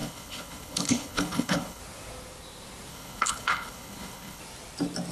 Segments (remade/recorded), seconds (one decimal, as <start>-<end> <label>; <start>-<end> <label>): 0.0-1.8 remade; 1.8-2.9 recorded; 2.9-4.4 remade; 4.4-5.1 recorded